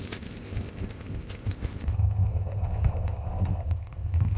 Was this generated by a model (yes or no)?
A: yes